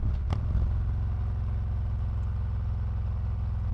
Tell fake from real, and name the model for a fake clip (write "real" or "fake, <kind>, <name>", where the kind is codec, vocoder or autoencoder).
real